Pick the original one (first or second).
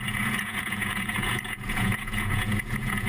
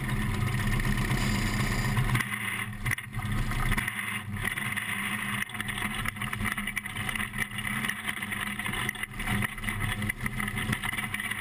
second